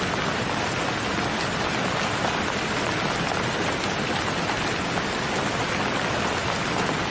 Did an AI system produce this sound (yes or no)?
no